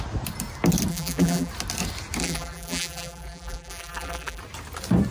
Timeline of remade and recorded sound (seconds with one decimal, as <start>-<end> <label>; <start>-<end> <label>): 0.0-0.9 recorded; 0.9-1.5 remade; 1.5-2.2 recorded; 2.2-4.4 remade; 4.4-5.1 recorded